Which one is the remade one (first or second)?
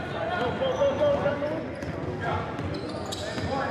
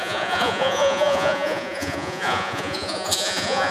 second